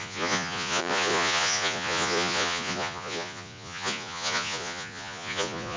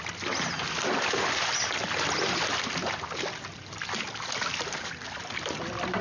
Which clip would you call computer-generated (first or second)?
first